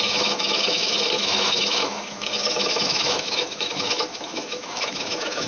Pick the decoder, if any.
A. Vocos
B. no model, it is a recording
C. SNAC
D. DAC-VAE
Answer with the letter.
D